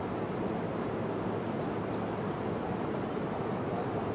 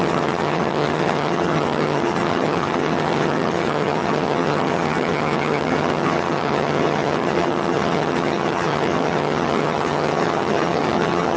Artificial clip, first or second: second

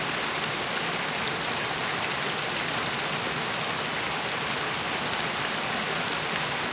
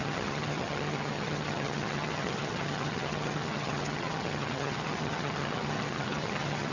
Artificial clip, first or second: second